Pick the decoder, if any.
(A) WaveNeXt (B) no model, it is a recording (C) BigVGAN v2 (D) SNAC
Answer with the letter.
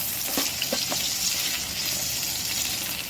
B